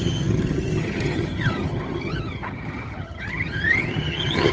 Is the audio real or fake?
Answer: fake